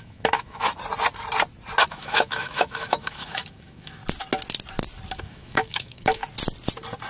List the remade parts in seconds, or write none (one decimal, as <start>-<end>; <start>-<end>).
0.0-0.7; 1.9-4.0; 5.2-6.2